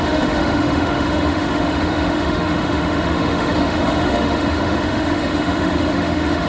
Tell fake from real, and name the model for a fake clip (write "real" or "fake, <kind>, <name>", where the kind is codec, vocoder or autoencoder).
fake, autoencoder, DAC-VAE